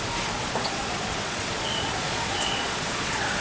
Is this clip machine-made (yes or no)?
yes